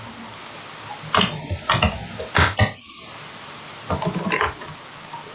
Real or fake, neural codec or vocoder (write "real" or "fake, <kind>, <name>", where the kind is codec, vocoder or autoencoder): real